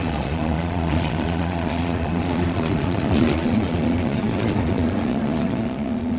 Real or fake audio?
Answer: fake